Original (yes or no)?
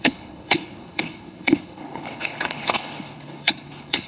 no